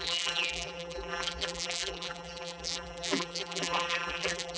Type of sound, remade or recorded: remade